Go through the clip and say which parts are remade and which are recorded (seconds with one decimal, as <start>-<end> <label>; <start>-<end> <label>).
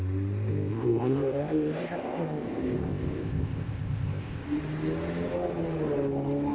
0.0-0.5 recorded; 0.5-4.4 remade; 4.4-6.5 recorded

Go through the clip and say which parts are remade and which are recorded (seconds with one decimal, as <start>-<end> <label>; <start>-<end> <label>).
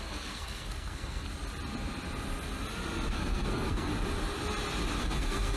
0.0-1.3 remade; 1.3-3.1 recorded; 3.1-3.9 remade; 3.9-5.0 recorded; 5.0-5.6 remade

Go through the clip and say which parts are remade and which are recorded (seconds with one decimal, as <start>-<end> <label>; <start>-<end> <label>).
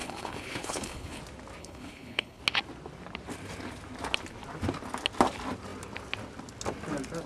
0.0-1.2 remade; 1.2-1.6 recorded; 1.6-2.4 remade; 2.4-7.3 recorded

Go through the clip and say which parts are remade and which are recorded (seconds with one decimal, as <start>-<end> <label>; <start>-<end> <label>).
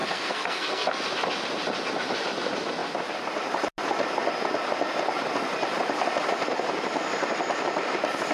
0.0-1.0 remade; 1.0-8.3 recorded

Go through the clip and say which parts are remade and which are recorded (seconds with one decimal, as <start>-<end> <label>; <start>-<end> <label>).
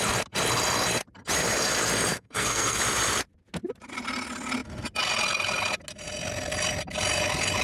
0.0-2.1 recorded; 2.1-2.8 remade; 2.8-7.6 recorded